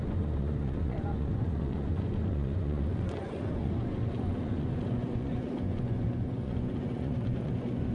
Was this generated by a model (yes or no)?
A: yes